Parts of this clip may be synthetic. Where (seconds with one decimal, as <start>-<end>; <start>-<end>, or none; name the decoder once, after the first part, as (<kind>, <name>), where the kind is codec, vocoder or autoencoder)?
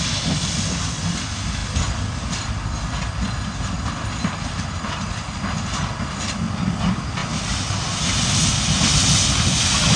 none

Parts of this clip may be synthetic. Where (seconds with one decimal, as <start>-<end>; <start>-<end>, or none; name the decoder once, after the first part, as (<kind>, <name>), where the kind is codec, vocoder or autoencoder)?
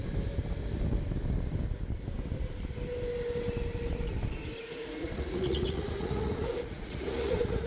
4.6-7.7 (vocoder, Vocos)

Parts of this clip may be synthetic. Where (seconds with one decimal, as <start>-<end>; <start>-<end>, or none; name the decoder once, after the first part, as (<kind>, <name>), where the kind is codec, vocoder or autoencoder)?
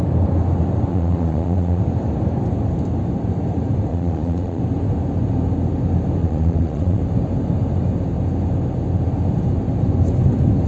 0.9-1.8 (vocoder, Vocos); 3.9-4.6; 6.2-7.0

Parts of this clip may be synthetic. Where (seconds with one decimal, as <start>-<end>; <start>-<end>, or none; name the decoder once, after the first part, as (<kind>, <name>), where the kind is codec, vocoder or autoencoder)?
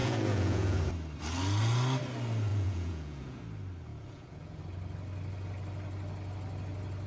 0.0-0.8 (vocoder, Vocos); 2.5-3.4; 3.9-4.6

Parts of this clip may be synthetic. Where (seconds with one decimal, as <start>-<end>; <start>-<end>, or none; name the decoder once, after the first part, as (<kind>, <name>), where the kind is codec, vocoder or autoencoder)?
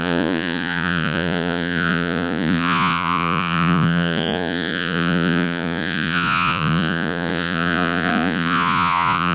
0.0-9.3 (vocoder, Vocos)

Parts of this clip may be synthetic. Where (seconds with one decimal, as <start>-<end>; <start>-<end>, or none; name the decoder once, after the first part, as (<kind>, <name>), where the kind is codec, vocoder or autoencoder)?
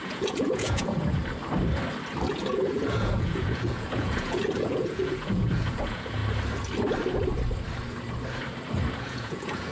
0.0-1.2 (vocoder, Vocos); 2.3-6.2; 8.9-9.7